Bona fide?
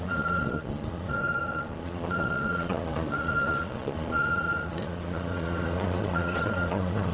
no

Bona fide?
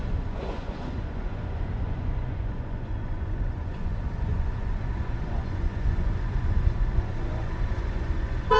no